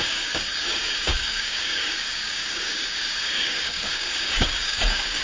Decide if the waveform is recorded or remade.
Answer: remade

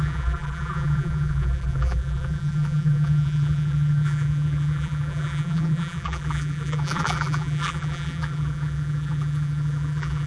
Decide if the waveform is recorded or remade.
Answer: remade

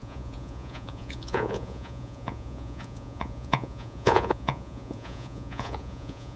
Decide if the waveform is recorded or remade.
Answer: remade